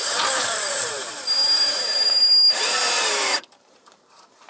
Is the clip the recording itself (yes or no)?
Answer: no